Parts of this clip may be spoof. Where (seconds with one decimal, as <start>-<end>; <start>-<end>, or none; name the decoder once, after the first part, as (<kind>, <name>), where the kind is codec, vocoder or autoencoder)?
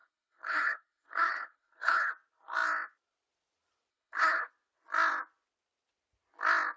0.0-2.1 (codec, HILCodec); 3.9-4.5